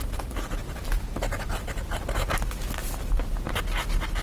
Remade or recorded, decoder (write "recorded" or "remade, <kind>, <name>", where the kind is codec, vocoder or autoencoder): recorded